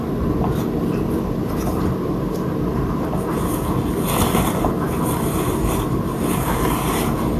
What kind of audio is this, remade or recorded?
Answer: recorded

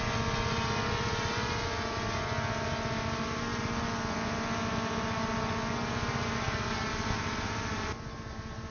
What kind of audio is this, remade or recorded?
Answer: recorded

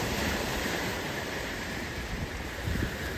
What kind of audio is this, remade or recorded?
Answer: remade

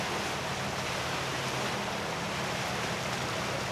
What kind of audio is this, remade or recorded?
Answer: recorded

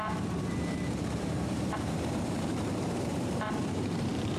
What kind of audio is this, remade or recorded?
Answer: remade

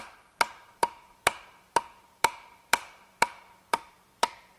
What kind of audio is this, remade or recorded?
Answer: remade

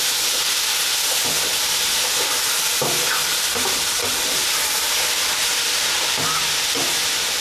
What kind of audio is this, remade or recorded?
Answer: remade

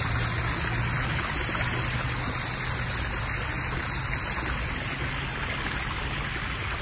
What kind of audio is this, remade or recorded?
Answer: recorded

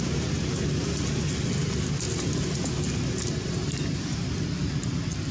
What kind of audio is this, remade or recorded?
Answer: recorded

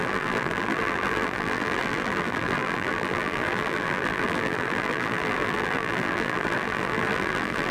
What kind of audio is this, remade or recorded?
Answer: remade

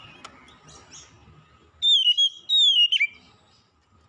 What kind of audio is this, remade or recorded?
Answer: recorded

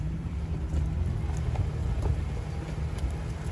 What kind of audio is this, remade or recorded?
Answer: recorded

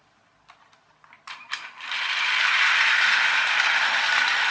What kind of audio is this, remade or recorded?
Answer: remade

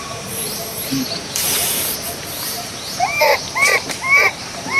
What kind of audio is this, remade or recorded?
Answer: remade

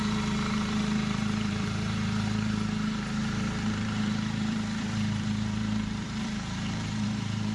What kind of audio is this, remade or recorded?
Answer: remade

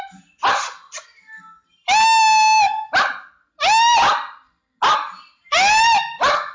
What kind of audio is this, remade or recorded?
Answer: recorded